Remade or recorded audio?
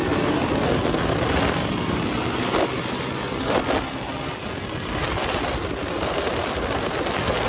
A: recorded